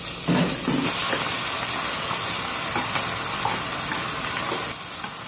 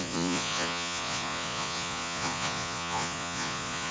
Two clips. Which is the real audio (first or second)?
first